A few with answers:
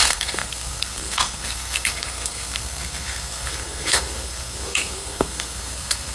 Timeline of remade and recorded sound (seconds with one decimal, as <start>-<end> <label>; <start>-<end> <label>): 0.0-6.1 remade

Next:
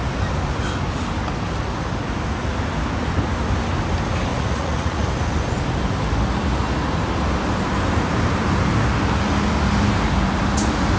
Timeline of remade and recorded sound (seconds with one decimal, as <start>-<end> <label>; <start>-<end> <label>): 0.0-4.3 recorded; 4.3-5.1 remade; 5.1-11.0 recorded

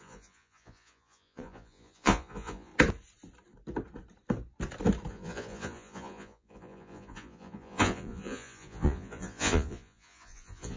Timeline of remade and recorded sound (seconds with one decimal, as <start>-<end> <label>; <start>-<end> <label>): 0.0-2.7 remade; 2.7-5.1 recorded; 5.1-10.8 remade

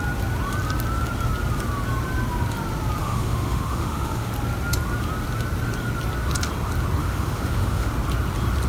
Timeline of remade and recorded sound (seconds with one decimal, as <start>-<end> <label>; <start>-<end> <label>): 0.0-3.0 recorded; 3.0-4.3 remade; 4.3-7.0 recorded; 7.0-7.9 remade; 7.9-8.7 recorded

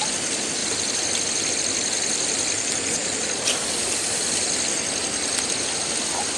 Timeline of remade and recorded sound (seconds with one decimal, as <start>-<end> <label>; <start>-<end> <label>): 0.0-6.4 recorded

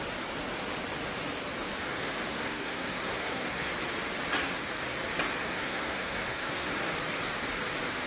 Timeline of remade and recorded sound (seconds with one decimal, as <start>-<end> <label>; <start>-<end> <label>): 0.0-2.3 recorded; 2.3-3.7 remade; 3.7-5.4 recorded; 5.4-6.7 remade; 6.7-8.1 recorded